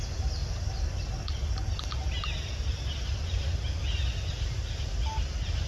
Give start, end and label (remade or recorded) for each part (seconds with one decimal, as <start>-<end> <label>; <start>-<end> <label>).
0.0-2.9 recorded; 2.9-3.6 remade; 3.6-5.7 recorded